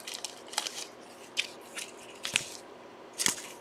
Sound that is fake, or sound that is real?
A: real